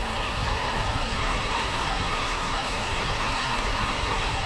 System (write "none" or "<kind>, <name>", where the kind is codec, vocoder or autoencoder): codec, SNAC